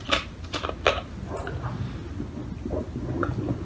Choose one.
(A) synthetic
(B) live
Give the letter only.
B